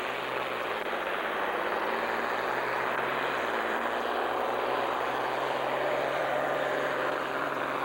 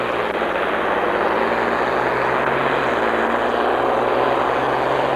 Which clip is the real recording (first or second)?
second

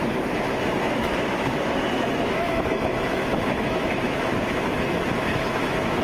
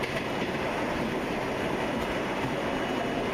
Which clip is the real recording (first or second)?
second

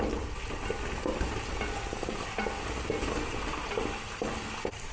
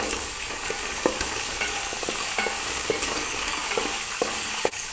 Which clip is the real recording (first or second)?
first